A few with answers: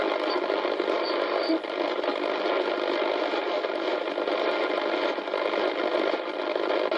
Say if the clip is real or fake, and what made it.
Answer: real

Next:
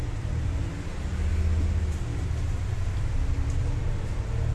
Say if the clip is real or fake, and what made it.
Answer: real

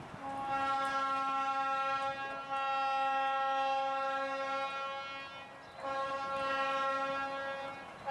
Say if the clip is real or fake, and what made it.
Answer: real